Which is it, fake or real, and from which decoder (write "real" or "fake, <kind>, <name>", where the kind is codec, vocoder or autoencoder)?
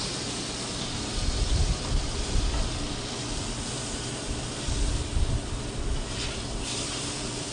real